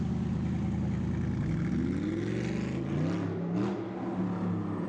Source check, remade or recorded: recorded